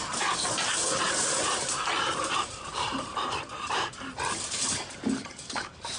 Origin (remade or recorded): remade